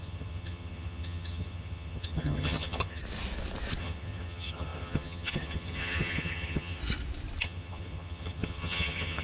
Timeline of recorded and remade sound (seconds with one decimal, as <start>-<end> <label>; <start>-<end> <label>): 0.0-3.0 remade; 3.0-3.8 recorded; 3.8-6.8 remade; 6.8-7.4 recorded; 7.4-9.2 remade